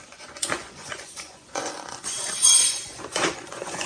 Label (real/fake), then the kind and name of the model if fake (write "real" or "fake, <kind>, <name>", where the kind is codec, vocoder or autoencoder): fake, vocoder, Vocos